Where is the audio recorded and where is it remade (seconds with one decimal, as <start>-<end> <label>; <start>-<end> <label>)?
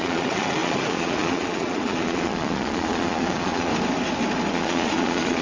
0.0-3.7 remade; 3.7-4.5 recorded; 4.5-5.4 remade